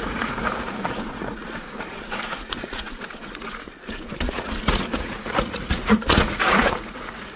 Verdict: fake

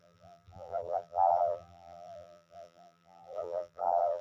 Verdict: fake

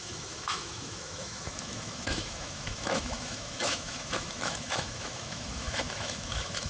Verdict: fake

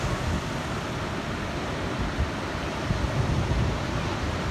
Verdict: real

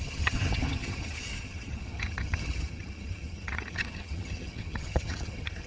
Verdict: fake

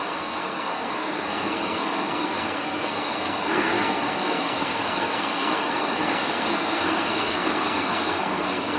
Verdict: fake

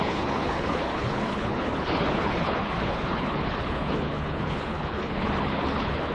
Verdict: fake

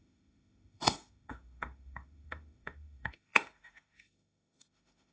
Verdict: fake